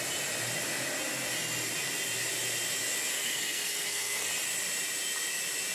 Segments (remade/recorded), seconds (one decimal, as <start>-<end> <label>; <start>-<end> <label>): 0.0-3.1 recorded; 3.1-4.3 remade; 4.3-5.7 recorded